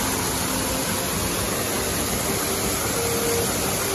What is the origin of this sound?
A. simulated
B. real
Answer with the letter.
B